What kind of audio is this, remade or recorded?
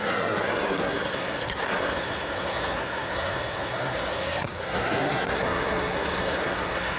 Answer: remade